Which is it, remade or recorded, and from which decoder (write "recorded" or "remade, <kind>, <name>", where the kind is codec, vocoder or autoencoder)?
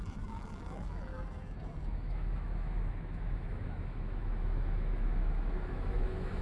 remade, autoencoder, DAC-VAE